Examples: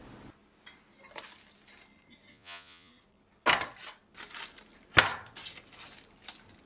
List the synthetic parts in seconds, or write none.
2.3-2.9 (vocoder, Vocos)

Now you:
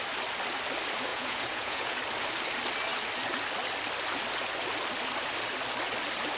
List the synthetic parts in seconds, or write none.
1.1-2.0 (vocoder, Vocos)

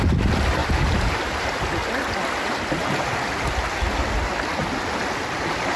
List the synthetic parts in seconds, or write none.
0.6-1.6 (vocoder, BigVGAN v2)

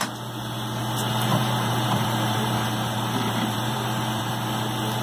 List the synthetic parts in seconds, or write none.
1.3-4.3 (vocoder, BigVGAN v2)